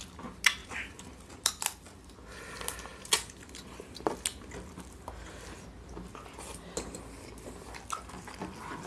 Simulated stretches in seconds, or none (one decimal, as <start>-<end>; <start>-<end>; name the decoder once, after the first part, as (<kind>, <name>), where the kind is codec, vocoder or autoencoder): 0.6-1.5 (vocoder, BigVGAN v2)